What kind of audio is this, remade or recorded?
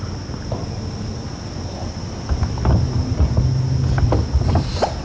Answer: recorded